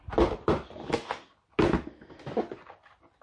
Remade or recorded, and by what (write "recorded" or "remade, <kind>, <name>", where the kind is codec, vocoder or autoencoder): recorded